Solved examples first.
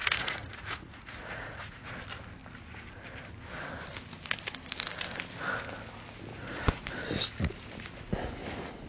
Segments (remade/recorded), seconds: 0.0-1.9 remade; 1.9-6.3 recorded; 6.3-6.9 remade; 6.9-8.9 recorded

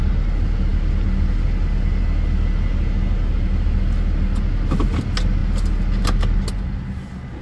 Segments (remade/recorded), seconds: 0.0-7.4 recorded

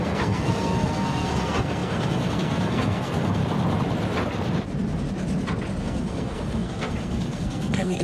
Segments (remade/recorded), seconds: 0.0-3.4 remade; 3.4-5.8 recorded; 5.8-8.0 remade

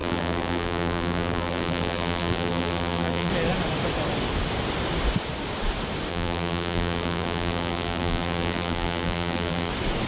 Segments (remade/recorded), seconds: 0.0-3.3 remade; 3.3-6.1 recorded; 6.1-9.7 remade; 9.7-10.1 recorded